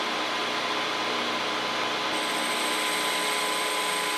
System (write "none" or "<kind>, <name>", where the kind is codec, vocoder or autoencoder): none